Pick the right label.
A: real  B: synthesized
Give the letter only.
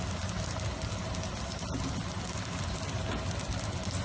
A